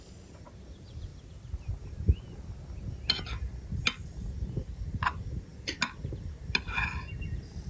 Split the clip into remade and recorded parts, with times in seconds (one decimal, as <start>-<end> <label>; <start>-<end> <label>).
0.0-7.7 recorded